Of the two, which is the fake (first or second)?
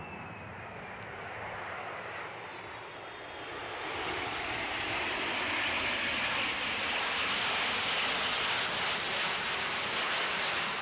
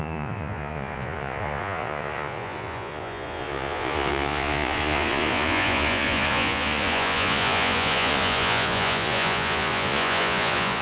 second